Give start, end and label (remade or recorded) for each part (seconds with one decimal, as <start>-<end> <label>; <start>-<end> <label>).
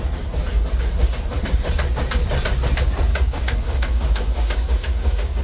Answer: 0.0-3.1 recorded; 3.1-5.4 remade